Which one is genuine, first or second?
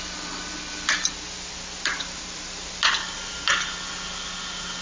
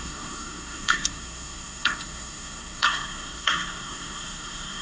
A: first